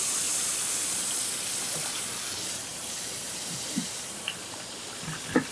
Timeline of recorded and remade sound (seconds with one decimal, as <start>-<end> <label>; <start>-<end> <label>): 0.0-2.7 recorded; 2.7-4.6 remade; 4.6-5.5 recorded